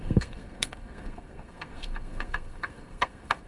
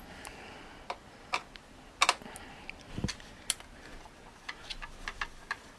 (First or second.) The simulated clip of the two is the first